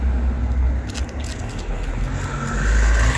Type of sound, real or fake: real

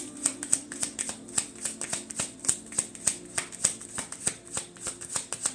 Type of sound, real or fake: real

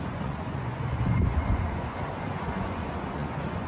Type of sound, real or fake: fake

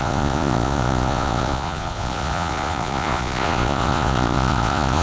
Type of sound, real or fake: fake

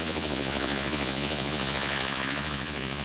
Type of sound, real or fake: fake